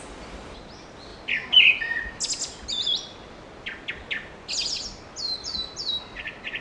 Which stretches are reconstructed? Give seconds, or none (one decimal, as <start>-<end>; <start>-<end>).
none